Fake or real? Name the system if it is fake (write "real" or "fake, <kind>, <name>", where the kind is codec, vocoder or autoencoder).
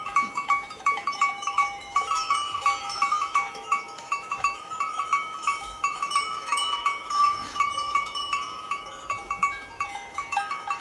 fake, autoencoder, DAC-VAE